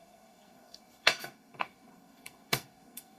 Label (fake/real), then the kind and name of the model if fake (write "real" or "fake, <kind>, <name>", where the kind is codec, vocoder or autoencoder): fake, codec, SNAC